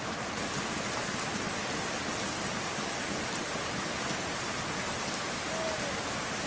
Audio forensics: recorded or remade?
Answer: recorded